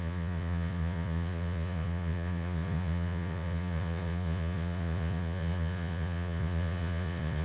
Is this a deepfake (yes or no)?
yes